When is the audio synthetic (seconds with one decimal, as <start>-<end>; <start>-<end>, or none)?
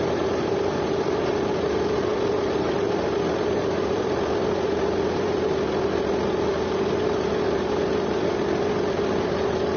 none